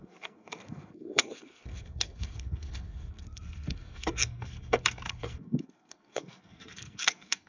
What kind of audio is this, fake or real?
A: fake